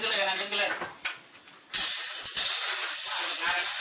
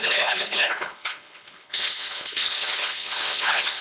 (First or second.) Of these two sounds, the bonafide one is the first